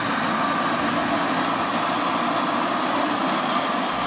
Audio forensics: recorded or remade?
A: recorded